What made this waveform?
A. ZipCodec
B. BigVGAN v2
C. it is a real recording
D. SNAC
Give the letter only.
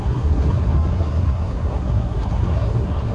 D